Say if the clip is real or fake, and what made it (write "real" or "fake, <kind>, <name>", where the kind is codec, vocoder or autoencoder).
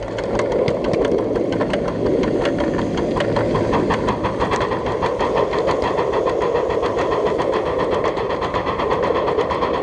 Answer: real